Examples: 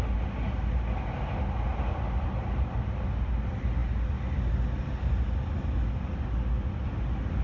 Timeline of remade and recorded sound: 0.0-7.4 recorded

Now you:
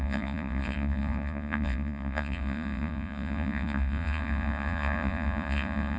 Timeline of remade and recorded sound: 0.0-6.0 remade

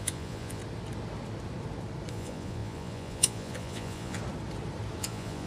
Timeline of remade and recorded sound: 0.0-0.6 remade; 0.6-2.1 recorded; 2.1-4.2 remade; 4.2-5.0 recorded; 5.0-5.5 remade

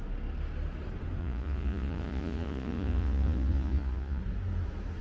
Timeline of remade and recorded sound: 0.0-1.2 recorded; 1.2-4.2 remade; 4.2-5.0 recorded

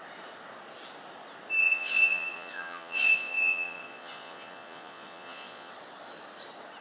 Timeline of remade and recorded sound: 0.0-1.6 recorded; 1.6-5.7 remade; 5.7-6.8 recorded

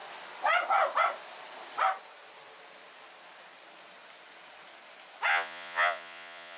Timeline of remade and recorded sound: 0.0-5.3 recorded; 5.3-6.6 remade

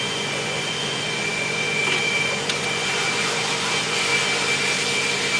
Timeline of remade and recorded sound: 0.0-4.1 remade; 4.1-5.4 recorded

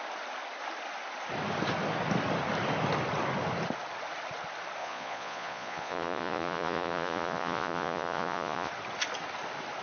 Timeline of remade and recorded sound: 0.0-4.8 recorded; 4.8-8.7 remade; 8.7-9.8 recorded